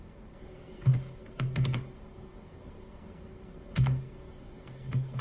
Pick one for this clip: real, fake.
fake